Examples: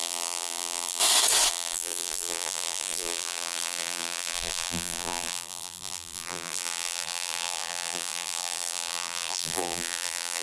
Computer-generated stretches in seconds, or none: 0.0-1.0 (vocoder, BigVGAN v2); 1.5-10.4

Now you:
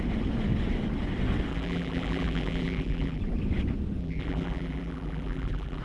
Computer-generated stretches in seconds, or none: 1.5-3.2 (vocoder, BigVGAN v2); 4.0-5.8